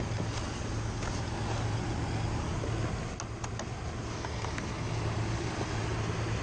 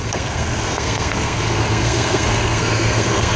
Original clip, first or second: first